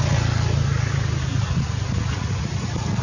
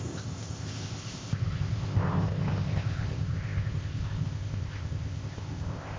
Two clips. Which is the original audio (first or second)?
first